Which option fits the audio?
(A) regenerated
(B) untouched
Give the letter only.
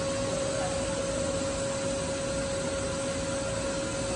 B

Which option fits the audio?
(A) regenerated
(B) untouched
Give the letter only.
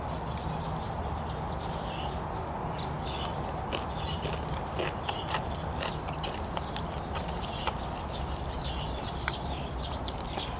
B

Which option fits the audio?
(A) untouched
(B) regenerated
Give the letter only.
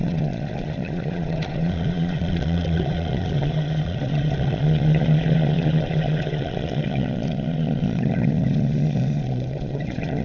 B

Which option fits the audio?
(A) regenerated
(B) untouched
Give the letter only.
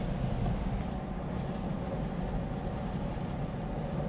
B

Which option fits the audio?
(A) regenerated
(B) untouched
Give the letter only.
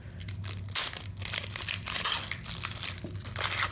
B